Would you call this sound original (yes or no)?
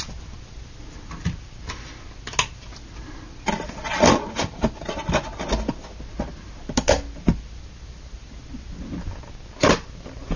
yes